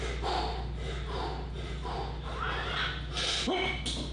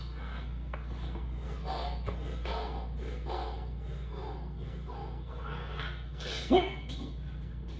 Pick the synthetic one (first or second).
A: second